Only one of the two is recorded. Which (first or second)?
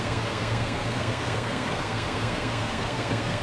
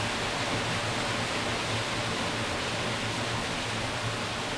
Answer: second